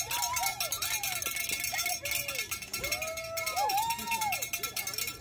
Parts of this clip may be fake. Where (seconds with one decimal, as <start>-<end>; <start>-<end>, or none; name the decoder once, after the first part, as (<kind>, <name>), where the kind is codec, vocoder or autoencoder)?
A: none